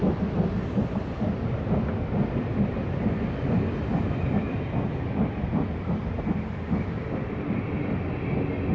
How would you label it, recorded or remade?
recorded